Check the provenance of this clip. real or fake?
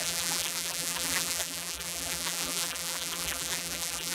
fake